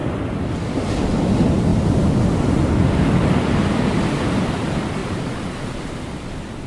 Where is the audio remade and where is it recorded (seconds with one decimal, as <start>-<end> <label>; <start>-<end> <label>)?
0.0-1.7 recorded; 1.7-4.6 remade; 4.6-5.0 recorded; 5.0-6.0 remade; 6.0-6.7 recorded